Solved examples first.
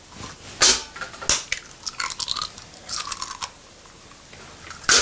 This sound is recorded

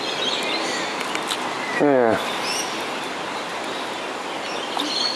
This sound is recorded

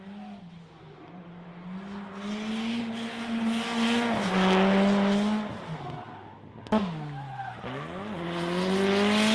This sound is recorded